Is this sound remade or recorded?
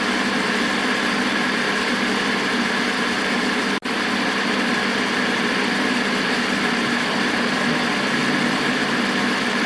recorded